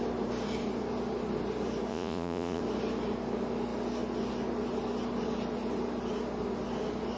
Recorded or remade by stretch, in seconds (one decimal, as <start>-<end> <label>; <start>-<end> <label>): 0.0-1.9 recorded; 1.9-2.6 remade; 2.6-7.2 recorded

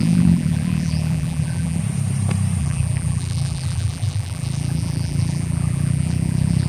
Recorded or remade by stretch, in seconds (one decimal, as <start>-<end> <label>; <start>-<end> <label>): 0.0-1.8 remade; 1.8-2.6 recorded; 2.6-6.7 remade

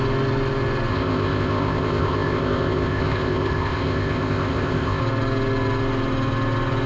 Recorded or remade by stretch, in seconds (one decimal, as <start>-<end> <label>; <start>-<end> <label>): 0.0-0.9 recorded; 0.9-5.0 remade; 5.0-6.9 recorded

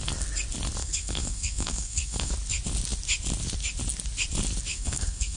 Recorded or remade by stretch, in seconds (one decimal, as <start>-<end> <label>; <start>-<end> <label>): 0.0-0.8 recorded; 0.8-2.3 remade; 2.3-4.7 recorded; 4.7-5.4 remade

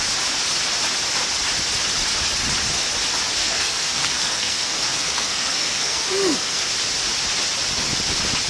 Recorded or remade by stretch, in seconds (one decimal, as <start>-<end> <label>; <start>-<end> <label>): 0.0-3.4 recorded; 3.4-6.6 remade; 6.6-8.5 recorded

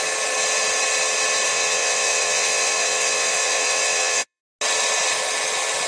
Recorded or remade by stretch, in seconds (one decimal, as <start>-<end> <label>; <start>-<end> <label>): 0.0-1.5 recorded; 1.5-4.4 remade; 4.4-5.9 recorded

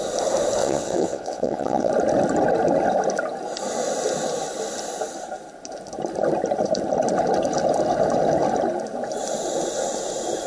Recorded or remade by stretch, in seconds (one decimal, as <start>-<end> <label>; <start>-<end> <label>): 0.0-0.6 recorded; 0.6-1.9 remade; 1.9-10.5 recorded